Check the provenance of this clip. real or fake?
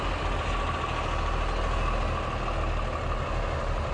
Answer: real